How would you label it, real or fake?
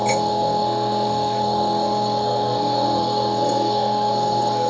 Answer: fake